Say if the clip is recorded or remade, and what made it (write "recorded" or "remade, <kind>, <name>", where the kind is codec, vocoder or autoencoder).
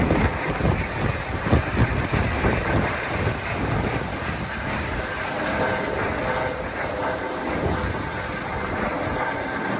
recorded